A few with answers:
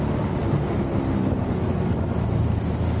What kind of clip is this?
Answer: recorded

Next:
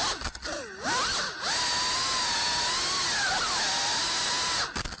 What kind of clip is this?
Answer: recorded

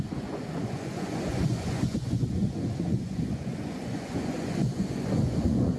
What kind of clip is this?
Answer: remade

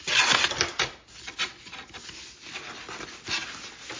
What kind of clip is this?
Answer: recorded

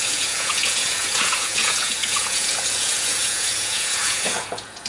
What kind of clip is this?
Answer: remade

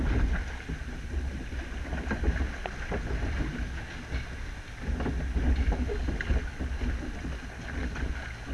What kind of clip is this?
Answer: recorded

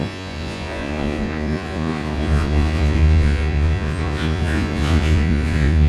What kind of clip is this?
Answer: remade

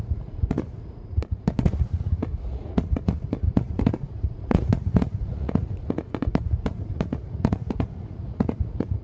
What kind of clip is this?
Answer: remade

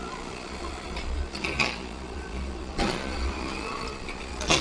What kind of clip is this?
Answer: remade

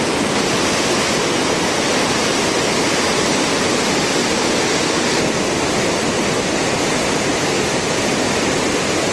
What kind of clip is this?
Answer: recorded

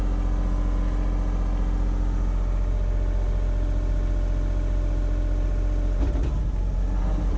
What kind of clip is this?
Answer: recorded